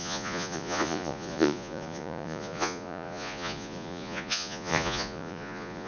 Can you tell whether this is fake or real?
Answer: fake